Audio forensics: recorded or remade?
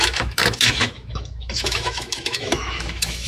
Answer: remade